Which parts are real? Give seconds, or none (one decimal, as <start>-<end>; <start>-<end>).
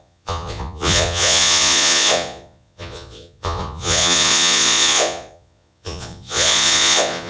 none